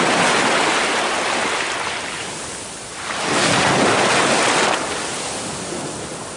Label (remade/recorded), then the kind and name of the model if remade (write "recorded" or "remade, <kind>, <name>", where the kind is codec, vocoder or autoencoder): recorded